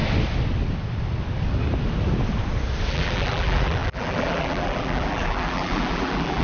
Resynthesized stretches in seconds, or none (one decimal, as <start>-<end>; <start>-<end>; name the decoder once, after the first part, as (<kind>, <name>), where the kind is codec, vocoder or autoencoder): 2.9-6.4 (vocoder, BigVGAN v2)

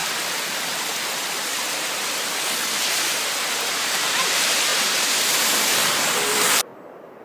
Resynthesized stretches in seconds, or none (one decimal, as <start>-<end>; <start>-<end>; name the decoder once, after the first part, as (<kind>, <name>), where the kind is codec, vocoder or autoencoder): 3.7-5.8 (vocoder, BigVGAN v2); 6.3-6.7